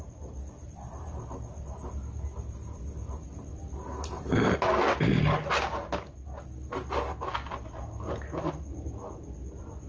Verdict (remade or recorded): recorded